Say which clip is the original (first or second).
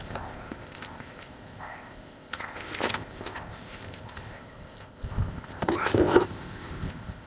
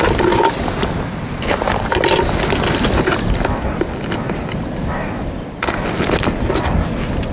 second